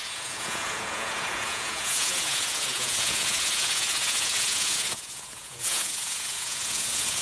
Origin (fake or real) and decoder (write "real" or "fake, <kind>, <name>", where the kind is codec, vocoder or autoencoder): fake, vocoder, Vocos